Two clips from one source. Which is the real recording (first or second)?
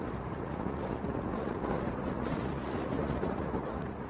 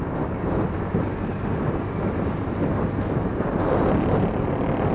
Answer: second